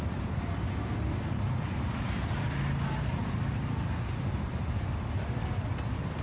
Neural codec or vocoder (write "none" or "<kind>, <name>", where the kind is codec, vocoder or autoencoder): none